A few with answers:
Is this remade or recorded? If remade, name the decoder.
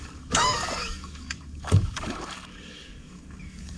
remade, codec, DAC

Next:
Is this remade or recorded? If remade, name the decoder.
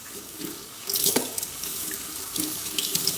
remade, codec, DAC